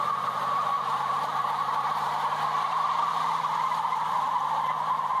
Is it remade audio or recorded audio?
remade